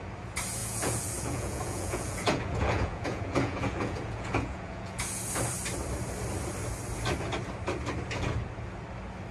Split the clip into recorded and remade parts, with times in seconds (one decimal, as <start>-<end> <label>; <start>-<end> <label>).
0.0-0.6 recorded; 0.6-5.2 remade; 5.2-9.3 recorded